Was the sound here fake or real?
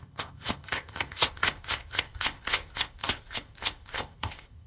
fake